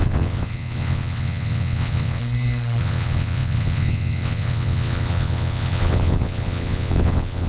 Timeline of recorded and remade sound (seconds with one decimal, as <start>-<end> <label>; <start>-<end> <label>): 0.0-2.2 remade; 2.2-2.8 recorded; 2.8-7.5 remade